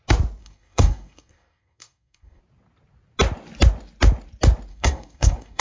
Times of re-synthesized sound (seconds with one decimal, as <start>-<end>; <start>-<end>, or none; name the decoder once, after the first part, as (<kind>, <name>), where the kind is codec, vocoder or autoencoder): 0.4-2.4 (codec, SNAC); 4.7-5.6